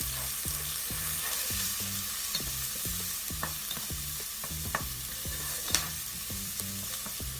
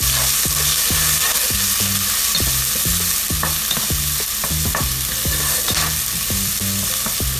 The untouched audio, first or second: second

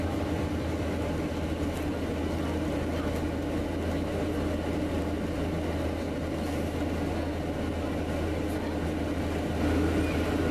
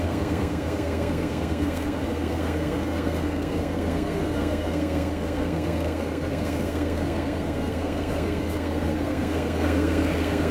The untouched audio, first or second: first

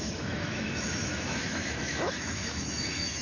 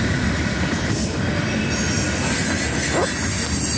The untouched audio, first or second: second